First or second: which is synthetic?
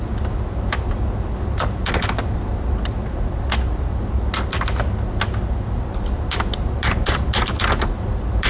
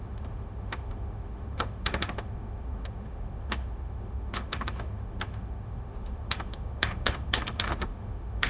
second